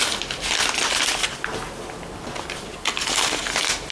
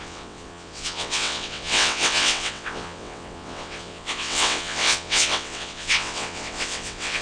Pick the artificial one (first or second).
second